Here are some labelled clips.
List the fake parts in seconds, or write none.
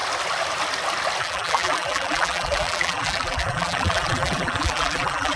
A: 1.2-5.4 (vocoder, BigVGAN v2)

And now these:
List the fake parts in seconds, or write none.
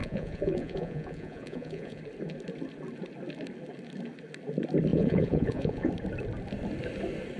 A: 0.0-2.0 (vocoder, Vocos); 4.9-5.9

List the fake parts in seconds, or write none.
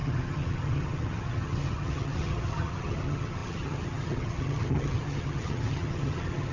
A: 0.0-6.5 (vocoder, HiFi-GAN)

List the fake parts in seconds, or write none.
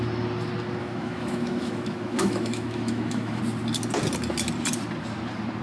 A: 0.8-3.4 (autoencoder, DAC-VAE)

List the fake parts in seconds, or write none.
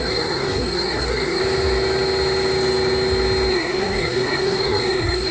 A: 0.0-1.4 (codec, SNAC); 3.5-5.3